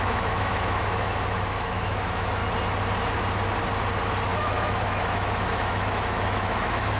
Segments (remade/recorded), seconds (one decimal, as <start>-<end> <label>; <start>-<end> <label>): 0.0-2.4 remade; 2.4-4.3 recorded; 4.3-7.0 remade